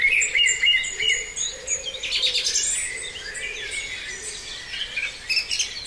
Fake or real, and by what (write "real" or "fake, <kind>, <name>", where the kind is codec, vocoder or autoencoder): real